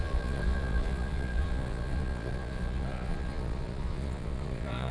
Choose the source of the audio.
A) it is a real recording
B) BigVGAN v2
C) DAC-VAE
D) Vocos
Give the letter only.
D